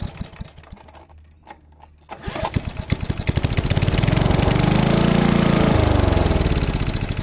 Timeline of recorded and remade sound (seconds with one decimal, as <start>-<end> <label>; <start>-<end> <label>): 0.0-7.2 recorded